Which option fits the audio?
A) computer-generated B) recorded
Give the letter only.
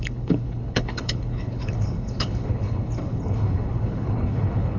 A